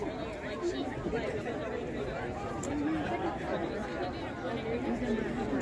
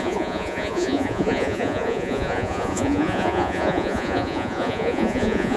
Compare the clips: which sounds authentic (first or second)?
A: first